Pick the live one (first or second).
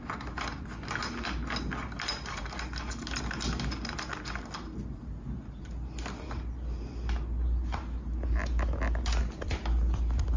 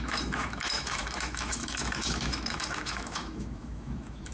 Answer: first